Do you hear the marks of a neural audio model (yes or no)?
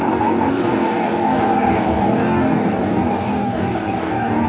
yes